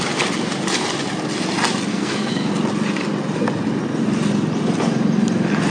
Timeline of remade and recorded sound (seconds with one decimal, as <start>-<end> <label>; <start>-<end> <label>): 0.0-1.9 recorded; 1.9-2.5 remade; 2.5-5.7 recorded